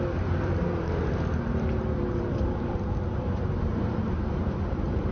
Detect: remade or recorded remade